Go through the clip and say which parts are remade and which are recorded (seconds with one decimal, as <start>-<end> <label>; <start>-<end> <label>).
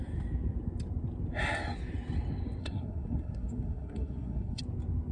0.0-2.6 recorded; 2.6-4.6 remade; 4.6-5.1 recorded